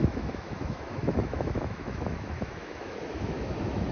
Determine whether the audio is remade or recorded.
remade